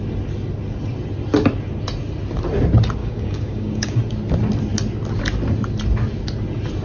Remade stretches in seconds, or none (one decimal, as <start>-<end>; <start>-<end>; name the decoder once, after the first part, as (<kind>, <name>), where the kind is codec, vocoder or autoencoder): 3.0-4.0 (codec, DAC)